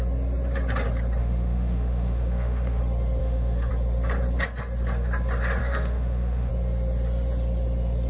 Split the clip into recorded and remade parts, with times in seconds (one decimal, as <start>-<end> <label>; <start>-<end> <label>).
0.0-1.2 recorded; 1.2-2.8 remade; 2.8-3.2 recorded; 3.2-3.7 remade; 3.7-5.6 recorded; 5.6-6.5 remade; 6.5-8.1 recorded